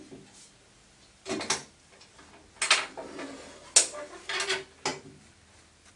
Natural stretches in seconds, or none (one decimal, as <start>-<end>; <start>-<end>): 0.0-1.6; 2.2-6.0